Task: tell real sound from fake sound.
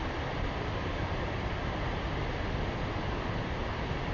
real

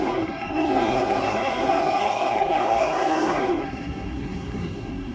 fake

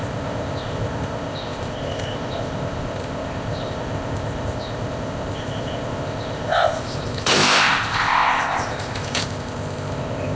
fake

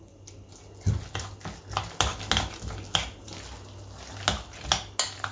real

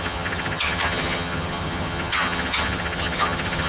fake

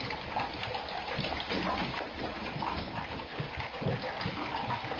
real